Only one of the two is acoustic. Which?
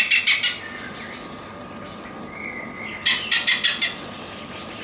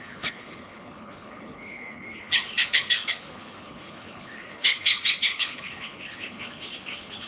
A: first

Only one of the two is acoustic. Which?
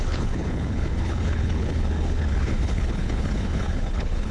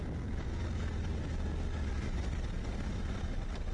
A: second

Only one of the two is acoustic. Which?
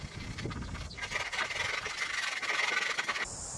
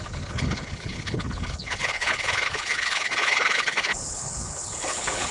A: first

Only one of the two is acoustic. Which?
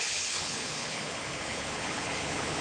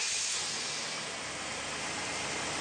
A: second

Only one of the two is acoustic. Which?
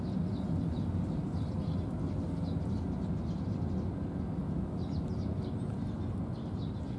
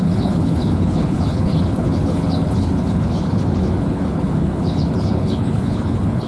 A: first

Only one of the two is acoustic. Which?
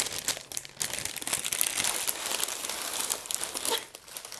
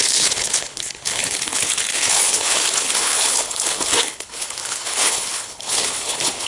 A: first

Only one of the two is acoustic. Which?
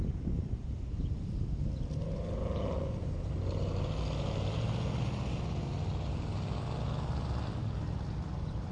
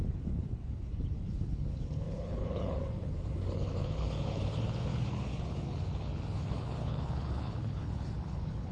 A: first